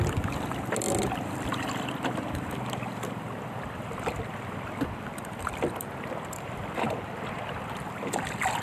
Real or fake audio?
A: real